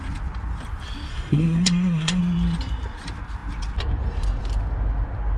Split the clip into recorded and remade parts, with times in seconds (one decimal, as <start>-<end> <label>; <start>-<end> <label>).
0.0-1.1 recorded; 1.1-2.2 remade; 2.2-5.4 recorded